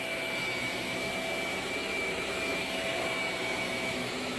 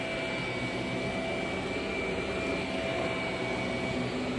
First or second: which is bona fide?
second